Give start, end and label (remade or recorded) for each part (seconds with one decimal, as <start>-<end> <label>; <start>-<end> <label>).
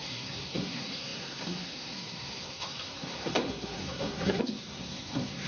0.0-5.5 remade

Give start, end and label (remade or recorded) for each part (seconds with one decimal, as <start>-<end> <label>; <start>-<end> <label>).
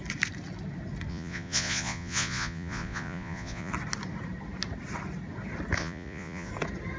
0.0-1.1 recorded; 1.1-3.7 remade; 3.7-5.8 recorded; 5.8-6.5 remade; 6.5-7.0 recorded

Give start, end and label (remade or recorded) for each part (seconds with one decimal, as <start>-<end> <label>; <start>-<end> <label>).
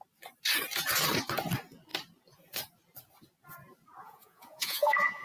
0.0-4.0 recorded; 4.0-5.2 remade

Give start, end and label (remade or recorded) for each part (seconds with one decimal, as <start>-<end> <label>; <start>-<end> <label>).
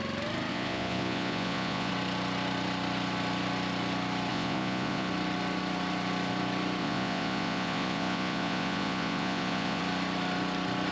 0.0-0.5 recorded; 0.5-1.9 remade; 1.9-4.3 recorded; 4.3-5.1 remade; 5.1-6.8 recorded; 6.8-9.8 remade; 9.8-10.9 recorded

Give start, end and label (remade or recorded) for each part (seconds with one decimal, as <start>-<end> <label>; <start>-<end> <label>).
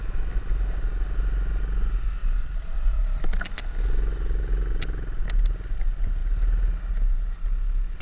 0.0-2.2 recorded; 2.2-3.0 remade; 3.0-8.0 recorded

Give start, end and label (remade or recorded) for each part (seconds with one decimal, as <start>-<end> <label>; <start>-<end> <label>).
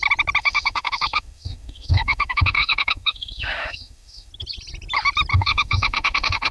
0.0-0.4 recorded; 0.4-4.3 remade; 4.3-5.3 recorded; 5.3-6.5 remade